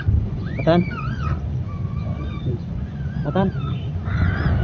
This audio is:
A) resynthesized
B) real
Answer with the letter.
A